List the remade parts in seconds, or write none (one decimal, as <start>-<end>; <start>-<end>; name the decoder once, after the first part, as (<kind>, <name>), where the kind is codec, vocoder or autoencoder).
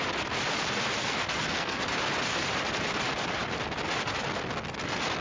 1.0-1.8 (codec, SNAC)